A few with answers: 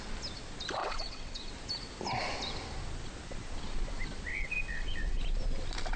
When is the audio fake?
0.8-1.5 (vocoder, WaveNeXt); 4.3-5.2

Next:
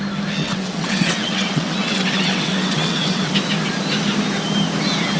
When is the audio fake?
0.4-3.3 (vocoder, WaveNeXt)

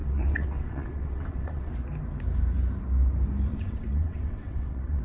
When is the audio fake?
0.0-1.7 (vocoder, WaveNeXt); 3.5-5.0

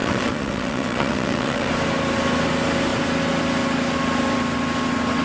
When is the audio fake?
0.0-1.7 (vocoder, WaveNeXt)

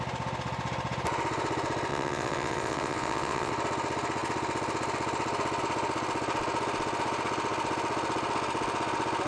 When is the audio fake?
1.9-3.5 (vocoder, WaveNeXt)

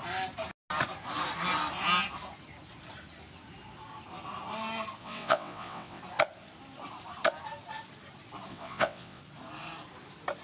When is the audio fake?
5.0-6.0 (vocoder, WaveNeXt); 8.5-9.2